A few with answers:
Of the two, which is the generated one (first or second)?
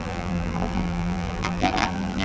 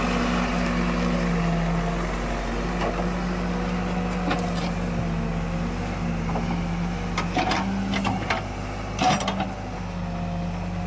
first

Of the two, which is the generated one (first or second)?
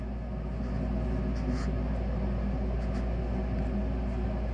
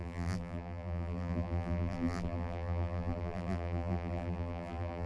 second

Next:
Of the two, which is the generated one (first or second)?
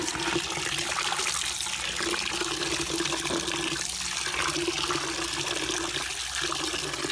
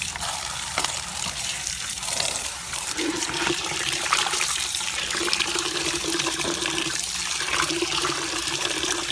second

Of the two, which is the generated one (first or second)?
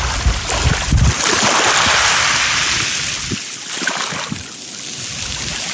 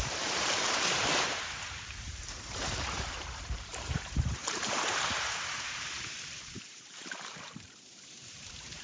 second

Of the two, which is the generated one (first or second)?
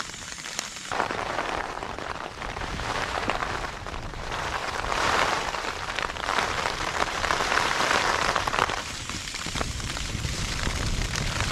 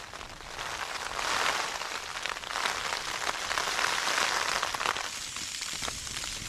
first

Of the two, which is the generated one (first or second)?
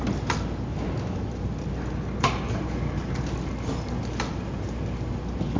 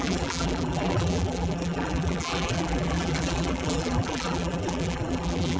second